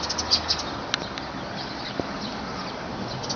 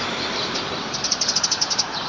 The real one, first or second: first